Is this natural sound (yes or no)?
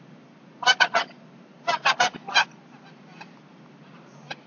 yes